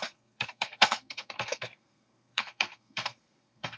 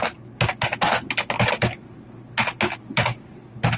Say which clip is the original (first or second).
second